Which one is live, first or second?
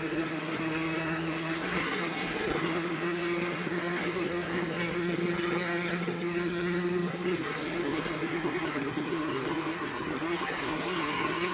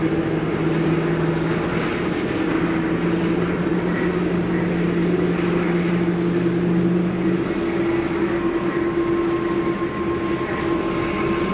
second